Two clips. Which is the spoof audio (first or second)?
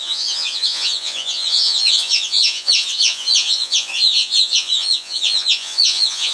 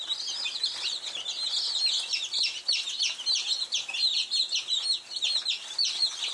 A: first